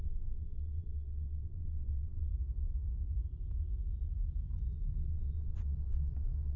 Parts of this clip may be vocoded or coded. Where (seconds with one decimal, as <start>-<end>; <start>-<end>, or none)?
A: 0.0-2.3; 5.0-6.6